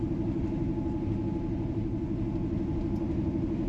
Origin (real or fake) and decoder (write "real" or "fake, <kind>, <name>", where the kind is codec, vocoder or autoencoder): real